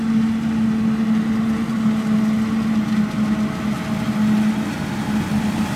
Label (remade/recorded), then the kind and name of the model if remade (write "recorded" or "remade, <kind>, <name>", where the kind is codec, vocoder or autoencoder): recorded